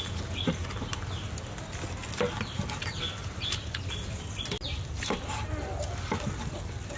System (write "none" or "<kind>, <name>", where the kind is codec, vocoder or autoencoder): none